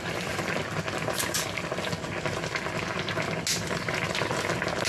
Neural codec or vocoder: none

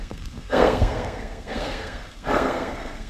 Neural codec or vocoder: codec, SNAC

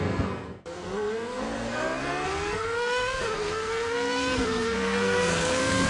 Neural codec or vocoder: codec, SNAC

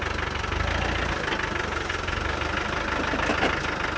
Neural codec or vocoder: none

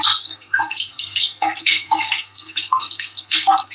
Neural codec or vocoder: codec, SNAC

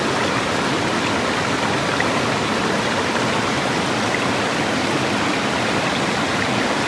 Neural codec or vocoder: none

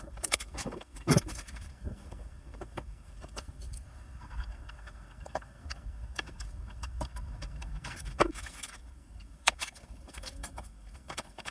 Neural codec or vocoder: codec, SNAC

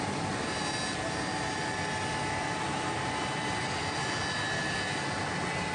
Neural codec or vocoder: none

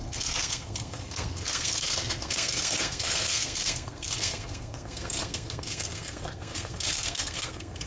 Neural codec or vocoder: codec, SNAC